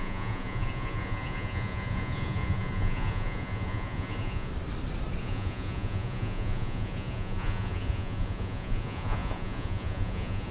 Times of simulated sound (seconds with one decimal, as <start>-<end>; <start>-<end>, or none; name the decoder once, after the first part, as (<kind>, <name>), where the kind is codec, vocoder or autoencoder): 0.0-4.5 (vocoder, Vocos); 5.2-10.5